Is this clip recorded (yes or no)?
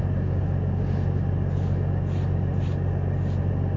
yes